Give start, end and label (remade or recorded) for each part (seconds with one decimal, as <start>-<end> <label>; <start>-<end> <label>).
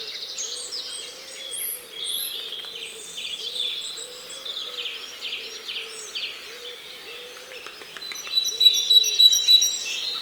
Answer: 0.0-3.7 recorded; 3.7-4.6 remade; 4.6-5.9 recorded; 5.9-10.2 remade